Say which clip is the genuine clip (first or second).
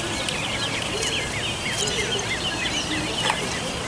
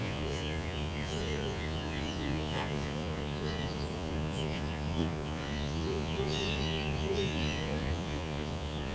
first